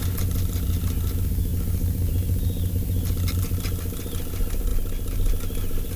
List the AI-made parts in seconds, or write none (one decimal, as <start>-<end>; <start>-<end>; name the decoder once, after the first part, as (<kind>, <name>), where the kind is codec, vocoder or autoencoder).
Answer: none